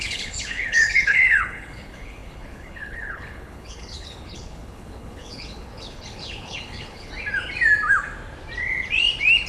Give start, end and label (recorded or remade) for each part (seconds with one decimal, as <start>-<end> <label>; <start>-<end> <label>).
0.0-7.1 remade; 7.1-9.5 recorded